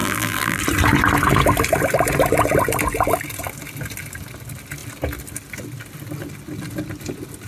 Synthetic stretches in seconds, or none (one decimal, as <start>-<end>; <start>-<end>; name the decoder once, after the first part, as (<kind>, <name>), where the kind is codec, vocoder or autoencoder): 0.0-0.6 (vocoder, BigVGAN v2)